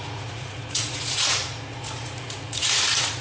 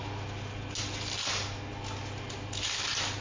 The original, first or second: second